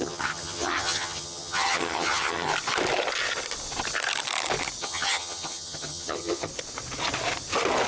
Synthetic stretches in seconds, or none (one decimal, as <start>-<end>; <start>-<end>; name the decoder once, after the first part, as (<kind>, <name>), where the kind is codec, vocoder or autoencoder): 0.0-2.5 (vocoder, HiFi-GAN); 4.8-6.5